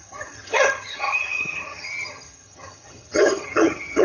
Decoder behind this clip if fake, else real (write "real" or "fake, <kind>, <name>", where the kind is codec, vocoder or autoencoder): fake, vocoder, HiFi-GAN